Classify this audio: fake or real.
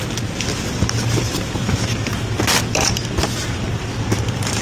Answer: real